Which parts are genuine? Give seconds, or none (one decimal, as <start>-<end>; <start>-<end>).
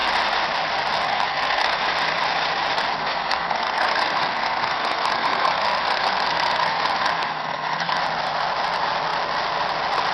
0.0-1.1; 1.8-3.0; 8.0-10.1